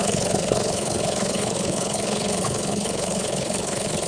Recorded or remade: remade